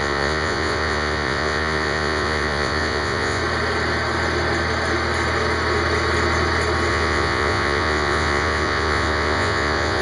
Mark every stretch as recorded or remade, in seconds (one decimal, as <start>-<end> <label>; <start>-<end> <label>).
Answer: 0.0-3.4 remade; 3.4-6.9 recorded; 6.9-10.0 remade